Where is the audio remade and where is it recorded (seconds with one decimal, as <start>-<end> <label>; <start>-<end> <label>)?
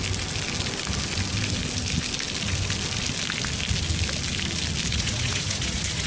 0.0-4.9 recorded; 4.9-6.1 remade